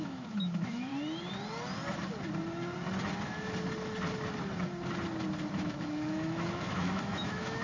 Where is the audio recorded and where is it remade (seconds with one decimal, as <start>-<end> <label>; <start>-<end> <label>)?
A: 0.0-0.9 remade; 0.9-5.5 recorded; 5.5-7.6 remade